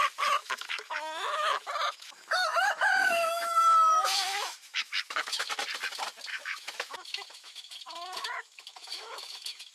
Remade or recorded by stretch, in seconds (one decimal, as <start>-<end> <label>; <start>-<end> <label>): 0.0-0.4 recorded; 0.4-5.5 remade; 5.5-6.3 recorded; 6.3-9.7 remade